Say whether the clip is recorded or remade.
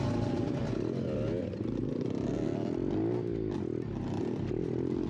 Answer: recorded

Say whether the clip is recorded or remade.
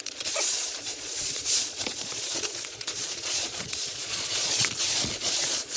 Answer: remade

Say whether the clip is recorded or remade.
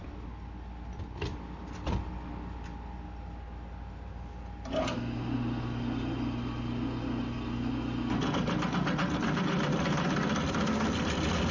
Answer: recorded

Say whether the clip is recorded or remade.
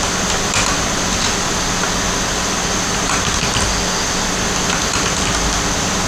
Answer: recorded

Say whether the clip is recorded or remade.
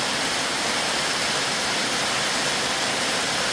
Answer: recorded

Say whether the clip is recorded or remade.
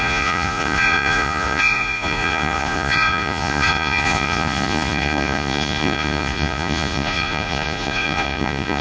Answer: remade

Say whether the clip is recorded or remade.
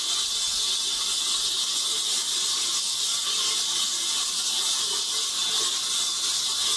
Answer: recorded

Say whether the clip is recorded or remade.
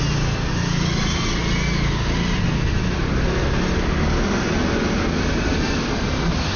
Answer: recorded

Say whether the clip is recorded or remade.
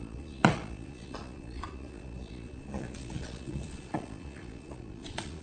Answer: remade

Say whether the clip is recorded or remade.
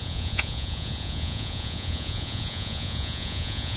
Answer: remade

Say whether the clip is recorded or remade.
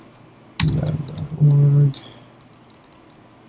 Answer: recorded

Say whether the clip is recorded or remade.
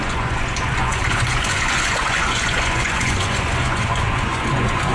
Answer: remade